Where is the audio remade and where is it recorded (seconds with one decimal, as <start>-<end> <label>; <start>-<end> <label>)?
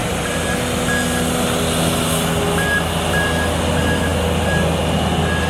0.0-0.5 remade; 0.5-5.5 recorded